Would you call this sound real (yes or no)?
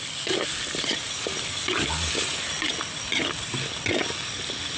yes